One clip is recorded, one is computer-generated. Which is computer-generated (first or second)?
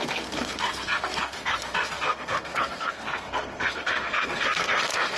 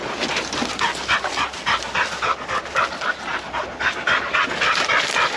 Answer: first